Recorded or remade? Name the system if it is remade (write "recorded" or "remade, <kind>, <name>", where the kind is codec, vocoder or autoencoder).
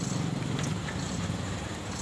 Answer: recorded